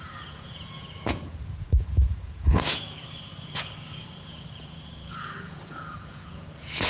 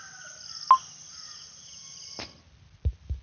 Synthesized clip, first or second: first